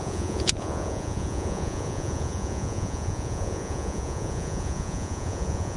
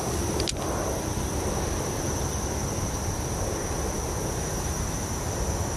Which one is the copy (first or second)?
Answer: first